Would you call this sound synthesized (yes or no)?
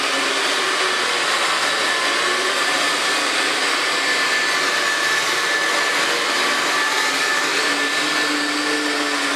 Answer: no